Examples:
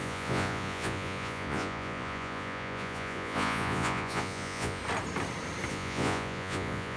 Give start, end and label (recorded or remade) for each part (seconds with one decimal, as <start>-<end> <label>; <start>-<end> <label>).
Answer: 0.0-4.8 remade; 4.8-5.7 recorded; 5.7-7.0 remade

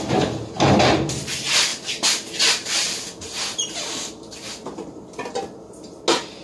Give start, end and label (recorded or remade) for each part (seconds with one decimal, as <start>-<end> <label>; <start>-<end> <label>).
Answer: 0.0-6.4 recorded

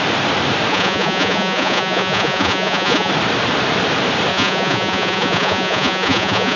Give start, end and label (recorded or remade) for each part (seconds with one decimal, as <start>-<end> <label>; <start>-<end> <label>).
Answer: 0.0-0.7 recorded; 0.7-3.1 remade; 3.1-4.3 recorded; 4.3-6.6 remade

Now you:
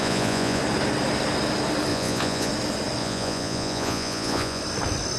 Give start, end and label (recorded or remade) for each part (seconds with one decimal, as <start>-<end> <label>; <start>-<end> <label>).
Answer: 0.0-0.6 remade; 0.6-1.9 recorded; 1.9-2.5 remade; 2.5-3.0 recorded; 3.0-4.6 remade; 4.6-5.2 recorded

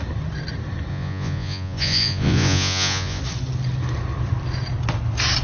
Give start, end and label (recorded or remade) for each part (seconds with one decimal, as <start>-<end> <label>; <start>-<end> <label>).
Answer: 0.0-0.9 recorded; 0.9-3.2 remade; 3.2-5.4 recorded